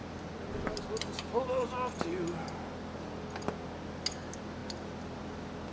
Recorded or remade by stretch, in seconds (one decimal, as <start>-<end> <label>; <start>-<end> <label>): 0.0-5.7 recorded